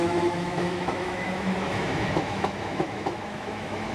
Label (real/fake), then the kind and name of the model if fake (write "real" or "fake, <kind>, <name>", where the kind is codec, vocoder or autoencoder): fake, autoencoder, DAC-VAE